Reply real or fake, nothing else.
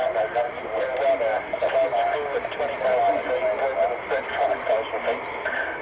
real